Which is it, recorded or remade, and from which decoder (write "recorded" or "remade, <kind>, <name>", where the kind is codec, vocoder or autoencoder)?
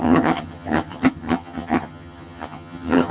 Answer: remade, vocoder, HiFi-GAN